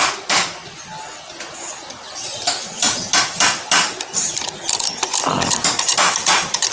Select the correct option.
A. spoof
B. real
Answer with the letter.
B